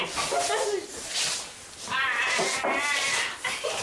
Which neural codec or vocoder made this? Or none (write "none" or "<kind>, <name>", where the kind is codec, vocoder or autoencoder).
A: none